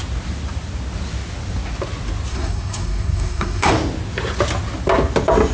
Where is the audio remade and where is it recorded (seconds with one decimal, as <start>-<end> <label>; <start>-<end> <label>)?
0.0-2.3 recorded; 2.3-3.7 remade; 3.7-5.5 recorded